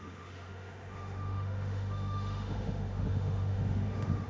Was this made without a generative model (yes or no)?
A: no